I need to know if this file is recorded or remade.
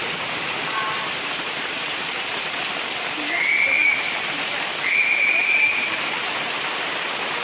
remade